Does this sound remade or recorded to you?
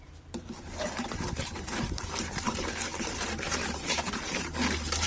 remade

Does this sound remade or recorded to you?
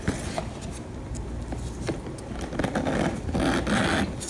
recorded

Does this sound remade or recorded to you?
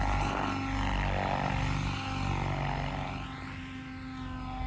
recorded